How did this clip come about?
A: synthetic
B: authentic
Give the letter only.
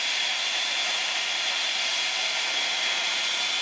A